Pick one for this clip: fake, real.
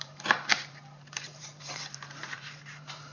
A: fake